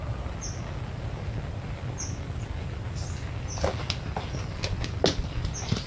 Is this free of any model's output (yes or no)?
yes